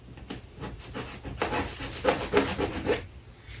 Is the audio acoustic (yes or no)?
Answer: yes